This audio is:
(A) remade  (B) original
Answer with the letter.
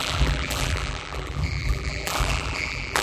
A